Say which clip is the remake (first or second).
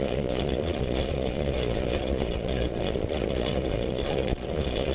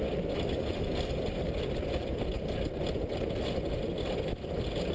first